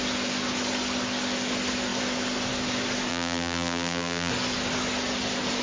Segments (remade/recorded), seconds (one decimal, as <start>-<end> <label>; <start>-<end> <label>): 0.0-3.1 recorded; 3.1-4.3 remade; 4.3-5.6 recorded